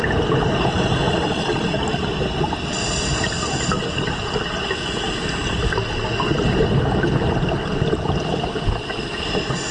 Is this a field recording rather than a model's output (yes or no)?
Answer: yes